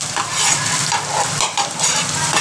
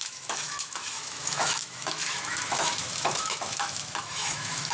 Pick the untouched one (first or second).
first